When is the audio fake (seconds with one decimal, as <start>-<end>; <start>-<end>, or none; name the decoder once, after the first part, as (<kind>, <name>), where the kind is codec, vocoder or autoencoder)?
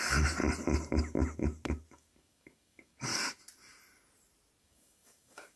0.0-0.4 (codec, DAC); 1.9-3.1; 4.6-5.6